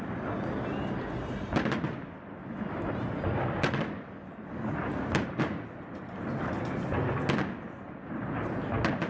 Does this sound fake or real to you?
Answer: real